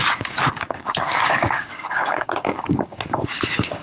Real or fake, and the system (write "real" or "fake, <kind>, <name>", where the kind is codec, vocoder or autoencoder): fake, codec, DAC